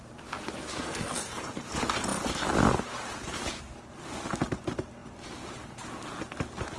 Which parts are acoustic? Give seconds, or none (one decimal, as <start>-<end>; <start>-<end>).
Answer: 0.0-0.6; 1.3-6.8